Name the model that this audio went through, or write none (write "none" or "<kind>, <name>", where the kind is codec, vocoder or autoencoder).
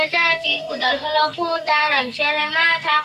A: codec, SNAC